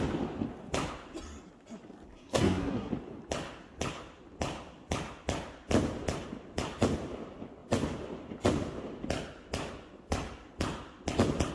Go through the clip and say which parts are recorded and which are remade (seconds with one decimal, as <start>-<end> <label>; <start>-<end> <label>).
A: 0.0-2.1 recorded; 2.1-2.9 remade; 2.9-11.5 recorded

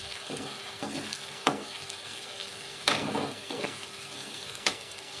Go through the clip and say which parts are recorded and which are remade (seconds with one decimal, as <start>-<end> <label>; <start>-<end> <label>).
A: 0.0-5.2 remade

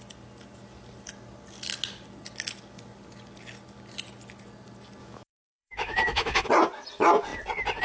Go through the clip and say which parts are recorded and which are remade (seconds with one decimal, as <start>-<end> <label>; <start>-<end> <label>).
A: 0.0-5.0 recorded; 5.0-6.5 remade; 6.5-7.8 recorded